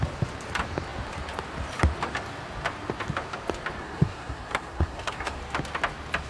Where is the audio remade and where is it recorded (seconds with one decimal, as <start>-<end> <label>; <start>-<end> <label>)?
0.0-3.8 recorded; 3.8-5.4 remade; 5.4-6.3 recorded